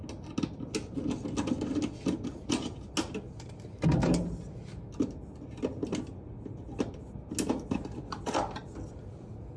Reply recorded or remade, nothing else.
recorded